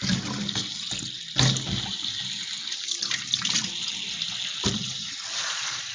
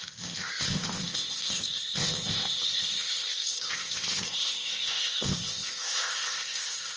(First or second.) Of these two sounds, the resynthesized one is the second